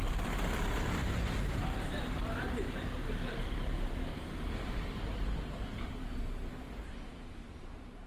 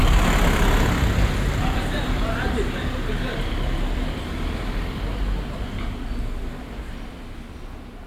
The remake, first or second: first